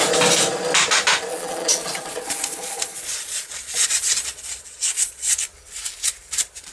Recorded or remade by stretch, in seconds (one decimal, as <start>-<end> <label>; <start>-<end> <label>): 0.0-1.3 recorded; 1.3-5.3 remade; 5.3-6.7 recorded